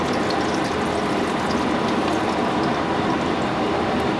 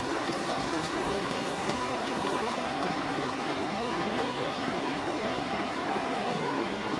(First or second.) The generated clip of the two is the second